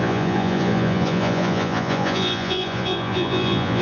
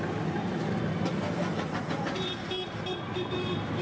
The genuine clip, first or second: second